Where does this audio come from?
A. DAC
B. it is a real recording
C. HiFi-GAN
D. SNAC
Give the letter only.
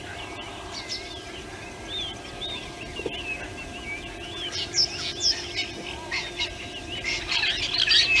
B